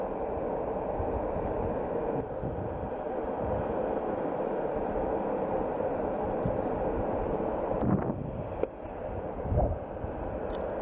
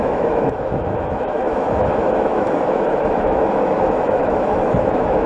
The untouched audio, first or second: first